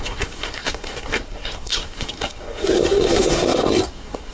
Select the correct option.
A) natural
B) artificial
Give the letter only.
B